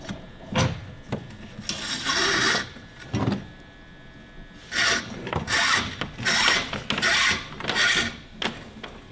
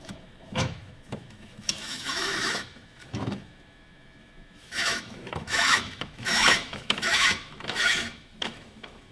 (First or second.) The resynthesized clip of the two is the second